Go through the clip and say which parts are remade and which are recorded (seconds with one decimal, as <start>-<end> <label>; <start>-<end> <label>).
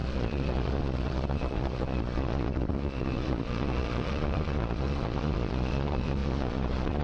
0.0-7.0 remade